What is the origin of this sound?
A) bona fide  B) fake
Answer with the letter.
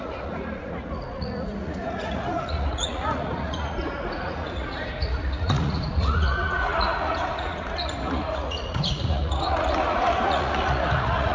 B